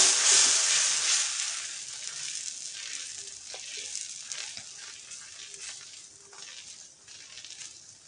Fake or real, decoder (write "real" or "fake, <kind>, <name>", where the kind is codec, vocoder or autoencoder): real